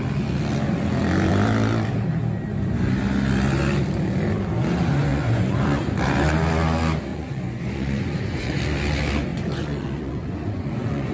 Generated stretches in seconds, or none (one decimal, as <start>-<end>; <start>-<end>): 5.1-5.8; 7.1-8.6; 9.3-11.1